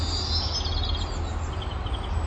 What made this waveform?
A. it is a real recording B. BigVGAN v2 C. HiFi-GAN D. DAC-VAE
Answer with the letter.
A